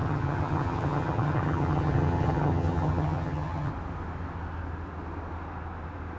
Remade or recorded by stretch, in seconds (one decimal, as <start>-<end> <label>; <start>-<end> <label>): 0.0-3.7 remade; 3.7-6.2 recorded